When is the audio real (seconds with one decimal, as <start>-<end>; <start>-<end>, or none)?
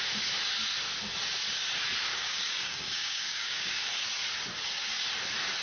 0.0-2.1; 3.8-5.6